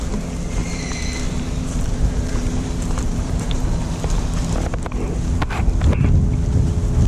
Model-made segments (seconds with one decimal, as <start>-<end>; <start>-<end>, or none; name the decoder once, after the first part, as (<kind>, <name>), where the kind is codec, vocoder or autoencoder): 0.6-4.2 (vocoder, BigVGAN v2)